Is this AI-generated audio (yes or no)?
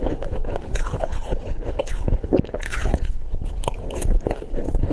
yes